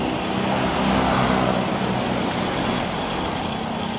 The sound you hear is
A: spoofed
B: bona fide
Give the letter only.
B